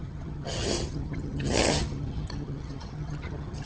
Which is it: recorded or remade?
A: remade